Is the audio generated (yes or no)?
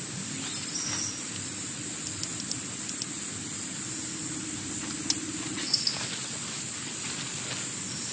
no